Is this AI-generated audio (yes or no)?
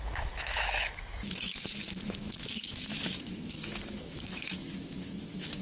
yes